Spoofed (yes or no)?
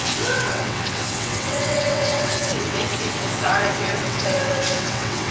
yes